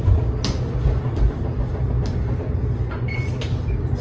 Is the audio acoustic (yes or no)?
yes